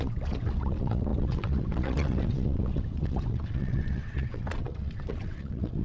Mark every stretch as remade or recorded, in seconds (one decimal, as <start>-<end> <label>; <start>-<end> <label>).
0.0-5.8 remade